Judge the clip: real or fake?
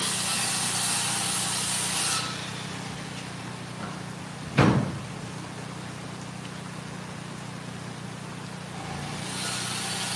real